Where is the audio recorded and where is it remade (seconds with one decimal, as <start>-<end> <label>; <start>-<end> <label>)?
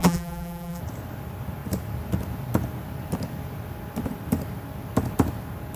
0.0-0.8 remade; 0.8-5.8 recorded